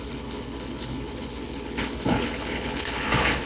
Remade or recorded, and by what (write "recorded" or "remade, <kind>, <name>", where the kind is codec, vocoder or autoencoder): remade, codec, HILCodec